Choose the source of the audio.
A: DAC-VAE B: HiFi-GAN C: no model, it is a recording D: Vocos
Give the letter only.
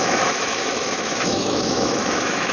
A